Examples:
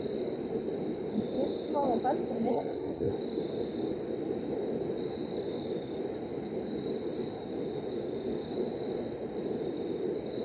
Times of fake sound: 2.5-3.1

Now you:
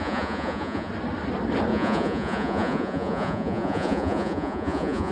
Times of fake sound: 0.0-0.9; 1.7-5.1

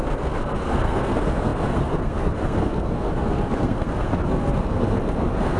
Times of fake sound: 0.0-5.6

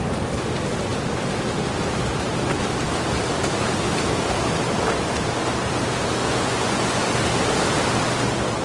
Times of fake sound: 6.2-7.1

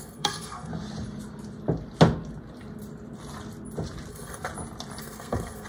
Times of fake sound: 0.0-0.7; 4.1-4.5; 5.0-5.7